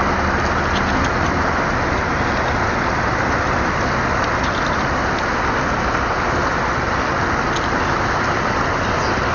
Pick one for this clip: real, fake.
real